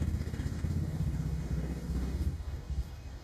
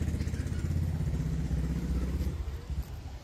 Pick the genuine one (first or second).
second